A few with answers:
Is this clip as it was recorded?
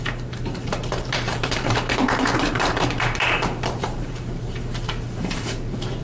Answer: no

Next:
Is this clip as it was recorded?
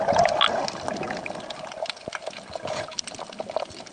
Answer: yes